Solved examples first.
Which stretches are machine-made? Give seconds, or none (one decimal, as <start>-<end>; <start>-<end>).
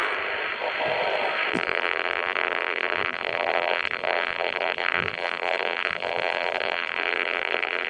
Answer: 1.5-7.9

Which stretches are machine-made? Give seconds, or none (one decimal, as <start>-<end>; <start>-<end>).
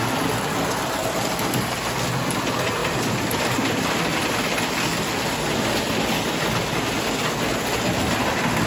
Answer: 2.8-4.7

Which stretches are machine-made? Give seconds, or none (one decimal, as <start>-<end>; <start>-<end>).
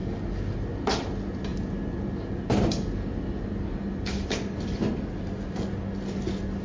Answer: 0.0-0.5